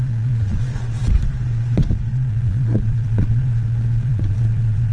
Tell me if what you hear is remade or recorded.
remade